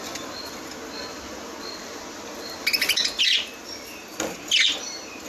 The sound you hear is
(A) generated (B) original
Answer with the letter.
B